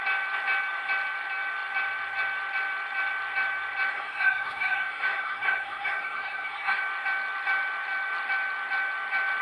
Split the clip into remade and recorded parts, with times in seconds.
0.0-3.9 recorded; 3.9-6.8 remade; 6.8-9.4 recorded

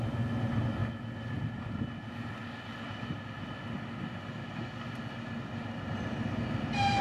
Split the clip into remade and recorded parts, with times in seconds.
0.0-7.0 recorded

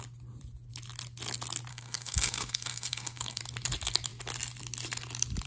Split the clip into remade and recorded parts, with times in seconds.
0.0-1.7 recorded; 1.7-3.4 remade; 3.4-5.5 recorded